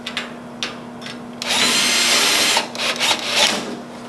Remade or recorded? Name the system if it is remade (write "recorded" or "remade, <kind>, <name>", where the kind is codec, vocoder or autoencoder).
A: recorded